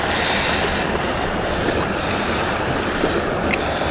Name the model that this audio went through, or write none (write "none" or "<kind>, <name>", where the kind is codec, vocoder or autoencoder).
none